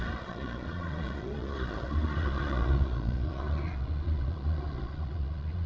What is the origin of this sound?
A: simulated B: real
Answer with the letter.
A